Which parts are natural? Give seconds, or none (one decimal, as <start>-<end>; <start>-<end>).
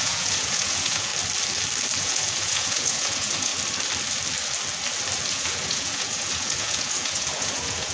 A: 1.1-2.0; 3.5-5.3